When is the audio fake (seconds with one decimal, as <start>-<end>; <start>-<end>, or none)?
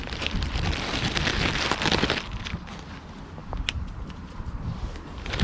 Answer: 0.0-0.6; 3.4-5.4